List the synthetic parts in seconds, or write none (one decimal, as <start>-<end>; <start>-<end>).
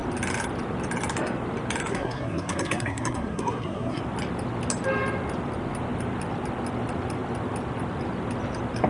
1.9-4.0